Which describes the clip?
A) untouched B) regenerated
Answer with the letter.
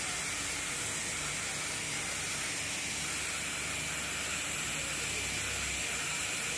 A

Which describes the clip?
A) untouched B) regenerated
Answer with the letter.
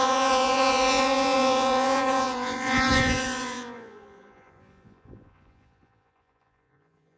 B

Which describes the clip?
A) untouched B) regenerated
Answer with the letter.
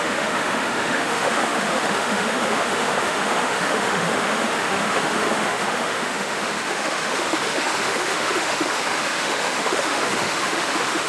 B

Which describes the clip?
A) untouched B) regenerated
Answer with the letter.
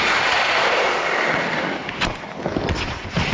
A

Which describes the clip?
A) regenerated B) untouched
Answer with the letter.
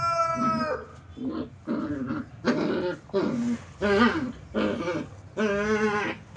B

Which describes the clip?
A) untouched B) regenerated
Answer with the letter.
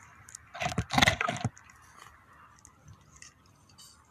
A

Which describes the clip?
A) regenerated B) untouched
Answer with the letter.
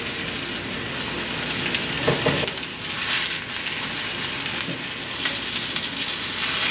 B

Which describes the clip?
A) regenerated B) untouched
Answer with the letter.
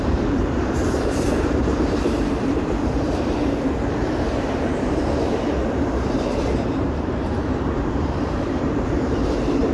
A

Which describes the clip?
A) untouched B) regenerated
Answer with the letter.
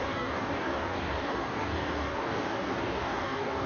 B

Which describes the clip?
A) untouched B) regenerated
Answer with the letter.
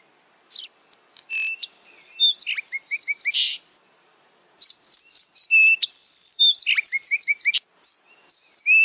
A